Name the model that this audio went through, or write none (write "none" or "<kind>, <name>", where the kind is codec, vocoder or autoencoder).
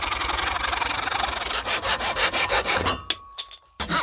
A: none